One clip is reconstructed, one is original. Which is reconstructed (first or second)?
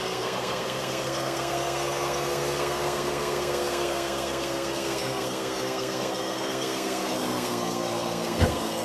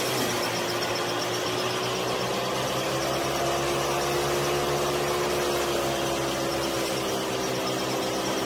first